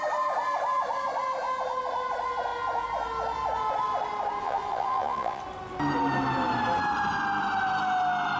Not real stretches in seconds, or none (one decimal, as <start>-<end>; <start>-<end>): 4.4-5.4